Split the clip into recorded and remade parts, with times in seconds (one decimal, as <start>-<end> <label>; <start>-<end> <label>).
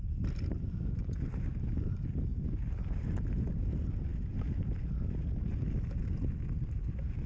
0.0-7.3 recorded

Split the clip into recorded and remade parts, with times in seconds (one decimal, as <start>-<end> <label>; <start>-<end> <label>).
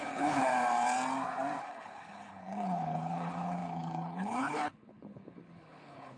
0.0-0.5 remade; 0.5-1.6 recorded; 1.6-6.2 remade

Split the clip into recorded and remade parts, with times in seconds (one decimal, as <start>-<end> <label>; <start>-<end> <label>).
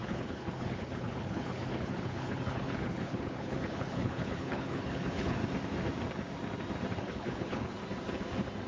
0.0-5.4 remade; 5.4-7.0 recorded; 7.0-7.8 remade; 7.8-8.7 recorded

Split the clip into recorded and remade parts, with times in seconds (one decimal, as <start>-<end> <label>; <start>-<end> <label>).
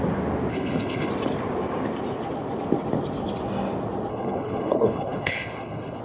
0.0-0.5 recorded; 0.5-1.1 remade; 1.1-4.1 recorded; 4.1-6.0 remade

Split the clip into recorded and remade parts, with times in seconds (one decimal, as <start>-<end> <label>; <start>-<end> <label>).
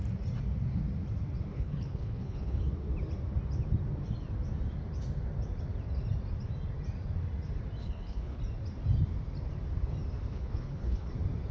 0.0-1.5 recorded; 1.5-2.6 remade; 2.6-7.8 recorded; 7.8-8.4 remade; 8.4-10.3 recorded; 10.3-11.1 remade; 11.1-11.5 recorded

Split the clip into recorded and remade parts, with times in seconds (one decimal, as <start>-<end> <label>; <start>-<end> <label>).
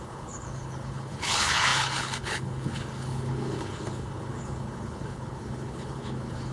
0.0-6.5 remade